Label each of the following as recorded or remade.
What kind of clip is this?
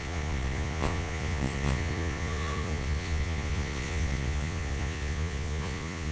remade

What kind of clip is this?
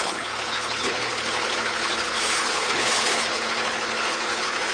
remade